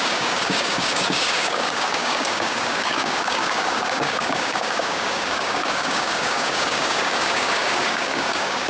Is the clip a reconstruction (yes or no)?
yes